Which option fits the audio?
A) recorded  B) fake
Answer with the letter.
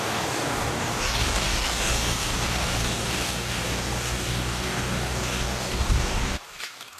B